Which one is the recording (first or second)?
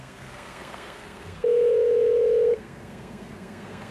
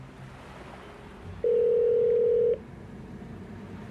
second